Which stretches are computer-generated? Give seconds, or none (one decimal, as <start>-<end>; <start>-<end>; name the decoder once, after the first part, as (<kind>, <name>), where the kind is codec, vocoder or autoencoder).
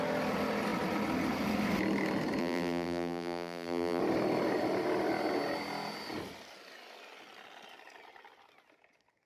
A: 2.4-4.0 (vocoder, BigVGAN v2)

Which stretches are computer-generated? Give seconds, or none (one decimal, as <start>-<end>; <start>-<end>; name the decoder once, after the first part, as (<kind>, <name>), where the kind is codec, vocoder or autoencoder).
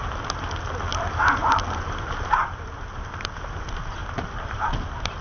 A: 0.9-3.5 (vocoder, BigVGAN v2); 4.0-4.7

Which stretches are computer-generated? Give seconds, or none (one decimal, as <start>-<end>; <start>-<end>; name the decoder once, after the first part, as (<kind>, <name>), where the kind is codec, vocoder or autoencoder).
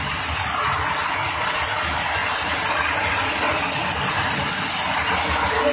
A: none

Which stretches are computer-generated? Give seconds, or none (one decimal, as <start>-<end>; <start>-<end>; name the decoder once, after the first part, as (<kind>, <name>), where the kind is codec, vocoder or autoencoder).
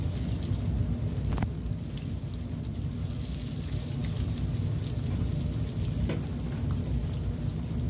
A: none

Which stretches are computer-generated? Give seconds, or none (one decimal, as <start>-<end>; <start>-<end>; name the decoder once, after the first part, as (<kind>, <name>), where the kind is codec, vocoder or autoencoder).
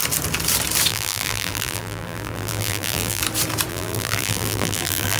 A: 0.9-3.2 (vocoder, BigVGAN v2); 3.7-5.2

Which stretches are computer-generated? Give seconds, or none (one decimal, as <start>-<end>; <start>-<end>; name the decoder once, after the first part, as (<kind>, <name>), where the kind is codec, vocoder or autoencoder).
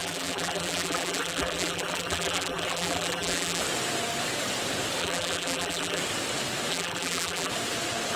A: 0.0-3.6 (vocoder, BigVGAN v2); 5.0-6.0; 6.7-7.5